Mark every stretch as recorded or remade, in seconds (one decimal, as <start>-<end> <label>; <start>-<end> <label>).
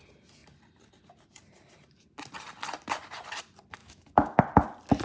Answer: 0.0-3.8 recorded; 3.8-4.4 remade; 4.4-5.0 recorded